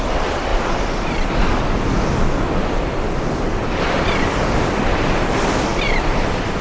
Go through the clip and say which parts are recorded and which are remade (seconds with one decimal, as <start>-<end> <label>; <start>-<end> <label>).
0.0-6.6 recorded